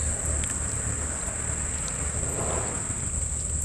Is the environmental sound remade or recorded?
recorded